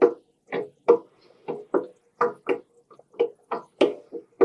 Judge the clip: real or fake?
real